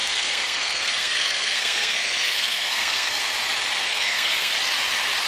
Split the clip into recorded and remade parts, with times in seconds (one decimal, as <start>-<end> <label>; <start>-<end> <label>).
0.0-3.2 remade; 3.2-3.8 recorded; 3.8-4.5 remade; 4.5-5.3 recorded